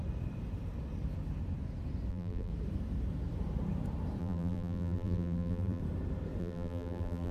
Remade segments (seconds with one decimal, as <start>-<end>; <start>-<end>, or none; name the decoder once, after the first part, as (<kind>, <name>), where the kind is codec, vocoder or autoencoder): 2.1-2.5 (vocoder, BigVGAN v2); 4.2-5.8; 6.4-7.3